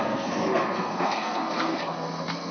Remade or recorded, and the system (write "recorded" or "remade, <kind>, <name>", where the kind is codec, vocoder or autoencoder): remade, codec, SNAC